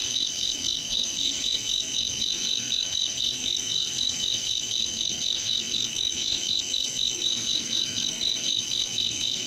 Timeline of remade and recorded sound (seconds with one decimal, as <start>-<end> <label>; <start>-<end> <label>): 0.0-9.5 remade